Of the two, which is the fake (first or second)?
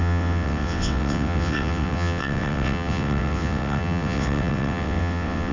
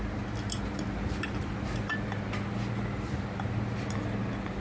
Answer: first